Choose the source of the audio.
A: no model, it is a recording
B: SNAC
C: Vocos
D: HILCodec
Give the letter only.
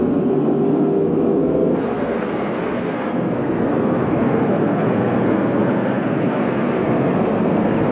B